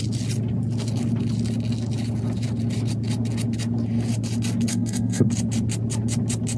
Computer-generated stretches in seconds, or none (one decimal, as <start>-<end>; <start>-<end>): 4.7-5.3